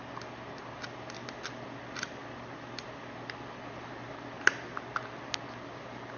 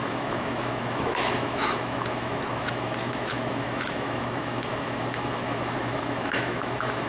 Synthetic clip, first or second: second